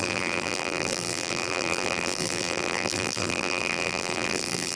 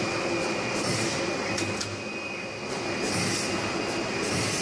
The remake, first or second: first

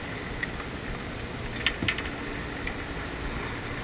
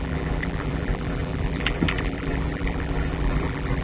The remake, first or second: second